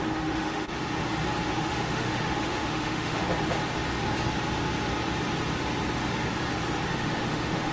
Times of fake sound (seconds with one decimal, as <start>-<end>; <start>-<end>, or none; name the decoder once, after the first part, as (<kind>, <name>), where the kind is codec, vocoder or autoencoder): 0.0-0.8 (autoencoder, DAC-VAE); 1.5-3.2; 6.9-7.7

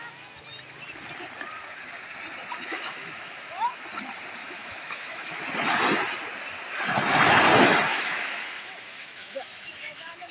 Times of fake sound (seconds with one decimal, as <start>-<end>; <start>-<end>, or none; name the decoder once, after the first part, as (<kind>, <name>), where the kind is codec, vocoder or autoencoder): 2.7-3.8 (autoencoder, DAC-VAE); 4.4-5.4; 7.9-10.3

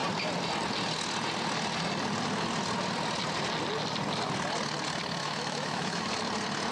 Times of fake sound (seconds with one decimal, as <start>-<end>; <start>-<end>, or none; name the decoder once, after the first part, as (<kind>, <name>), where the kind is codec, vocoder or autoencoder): 5.2-6.0 (autoencoder, DAC-VAE)

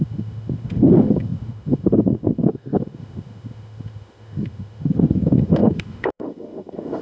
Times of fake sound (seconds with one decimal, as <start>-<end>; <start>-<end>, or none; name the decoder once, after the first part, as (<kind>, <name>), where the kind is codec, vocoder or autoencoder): 0.0-7.0 (autoencoder, DAC-VAE)

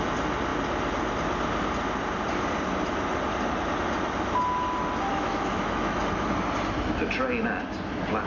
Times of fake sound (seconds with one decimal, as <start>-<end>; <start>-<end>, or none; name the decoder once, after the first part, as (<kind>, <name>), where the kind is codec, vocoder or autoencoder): 5.1-6.0 (autoencoder, DAC-VAE)